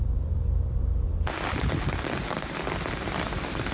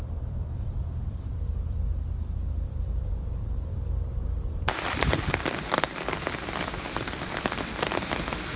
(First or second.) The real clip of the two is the first